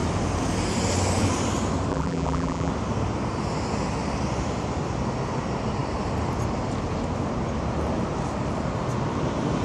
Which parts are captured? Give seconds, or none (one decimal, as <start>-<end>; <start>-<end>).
0.0-1.9; 2.7-9.6